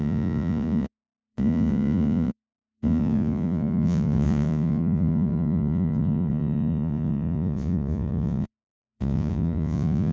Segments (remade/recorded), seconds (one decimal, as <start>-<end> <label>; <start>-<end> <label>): 0.0-10.1 remade